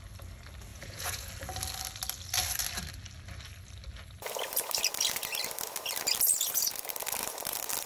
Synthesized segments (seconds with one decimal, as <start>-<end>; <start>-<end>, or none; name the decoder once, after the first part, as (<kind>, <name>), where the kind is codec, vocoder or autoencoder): 0.7-1.3 (vocoder, Vocos)